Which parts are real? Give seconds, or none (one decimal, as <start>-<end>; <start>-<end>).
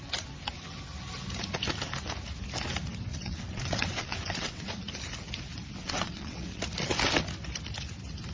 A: 0.0-3.1; 4.7-5.8; 6.6-8.3